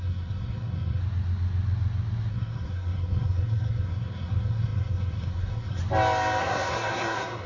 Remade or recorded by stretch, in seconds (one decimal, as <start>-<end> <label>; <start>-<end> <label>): 0.0-1.0 remade; 1.0-2.3 recorded; 2.3-5.8 remade; 5.8-6.4 recorded; 6.4-7.5 remade